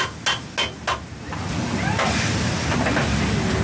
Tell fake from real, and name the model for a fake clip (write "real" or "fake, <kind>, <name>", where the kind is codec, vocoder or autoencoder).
real